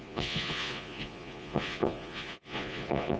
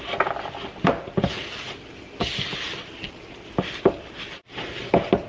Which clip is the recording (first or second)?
second